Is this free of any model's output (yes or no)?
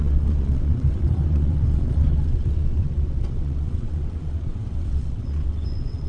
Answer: no